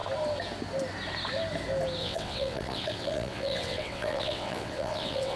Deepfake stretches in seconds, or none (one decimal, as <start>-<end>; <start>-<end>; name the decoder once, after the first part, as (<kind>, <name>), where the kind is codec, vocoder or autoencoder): 2.0-5.4 (vocoder, WaveNeXt)